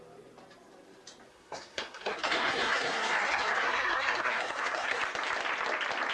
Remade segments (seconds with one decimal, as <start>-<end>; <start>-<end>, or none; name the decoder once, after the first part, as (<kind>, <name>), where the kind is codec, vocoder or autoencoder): 1.3-5.0 (codec, SNAC)

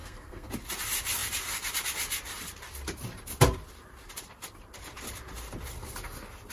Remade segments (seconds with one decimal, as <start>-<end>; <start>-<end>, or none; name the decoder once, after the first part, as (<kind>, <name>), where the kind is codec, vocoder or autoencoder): 0.0-0.5 (codec, SNAC)

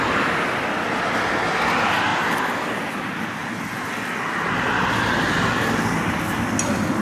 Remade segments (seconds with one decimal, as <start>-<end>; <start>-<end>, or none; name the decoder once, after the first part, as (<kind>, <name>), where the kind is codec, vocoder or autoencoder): 2.1-2.7 (vocoder, BigVGAN v2)

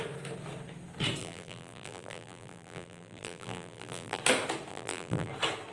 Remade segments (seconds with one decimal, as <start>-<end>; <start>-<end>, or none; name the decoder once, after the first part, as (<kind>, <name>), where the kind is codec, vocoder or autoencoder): 1.2-4.2 (vocoder, BigVGAN v2); 4.7-5.3

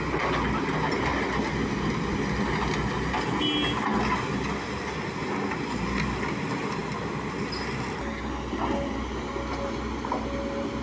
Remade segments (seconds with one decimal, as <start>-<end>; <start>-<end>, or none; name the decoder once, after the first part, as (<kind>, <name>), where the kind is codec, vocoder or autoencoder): none

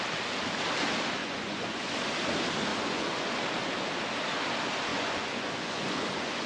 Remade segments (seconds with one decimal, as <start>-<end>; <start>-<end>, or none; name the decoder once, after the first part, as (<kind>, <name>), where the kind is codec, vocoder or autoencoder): 1.2-1.9 (vocoder, Vocos); 2.7-3.4; 4.9-6.5

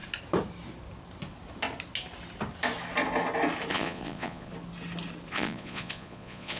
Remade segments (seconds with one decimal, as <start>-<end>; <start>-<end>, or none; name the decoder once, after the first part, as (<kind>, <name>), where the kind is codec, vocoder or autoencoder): 3.7-4.5 (vocoder, Vocos); 5.3-6.6

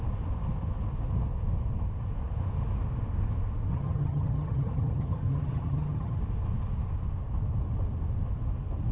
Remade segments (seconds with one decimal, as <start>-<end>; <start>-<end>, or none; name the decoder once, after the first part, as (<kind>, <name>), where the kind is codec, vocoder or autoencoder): 3.7-6.2 (vocoder, HiFi-GAN)